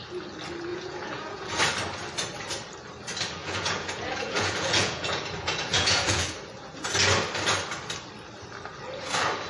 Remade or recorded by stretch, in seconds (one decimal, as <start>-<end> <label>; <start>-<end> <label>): 0.0-0.7 recorded; 0.7-1.6 remade; 1.6-3.4 recorded; 3.4-6.3 remade; 6.3-9.5 recorded